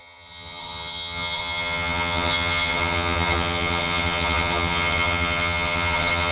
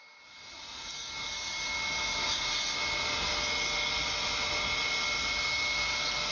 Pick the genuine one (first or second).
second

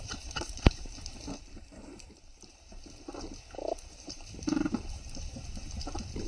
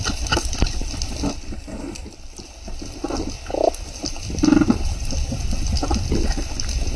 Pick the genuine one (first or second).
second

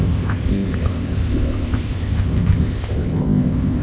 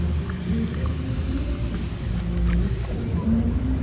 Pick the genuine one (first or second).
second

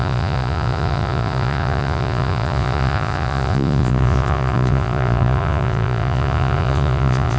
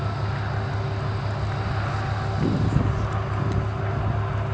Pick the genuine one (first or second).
second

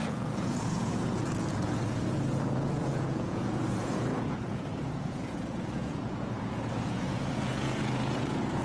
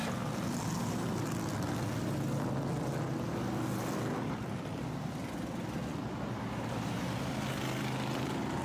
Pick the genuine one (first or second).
second